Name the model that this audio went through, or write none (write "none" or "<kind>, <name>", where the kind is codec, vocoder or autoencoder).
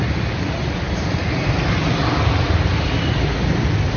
none